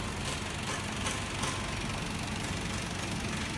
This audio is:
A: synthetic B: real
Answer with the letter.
B